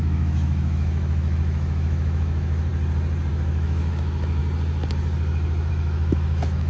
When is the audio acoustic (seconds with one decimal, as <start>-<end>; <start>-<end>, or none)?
2.7-3.3; 4.4-5.7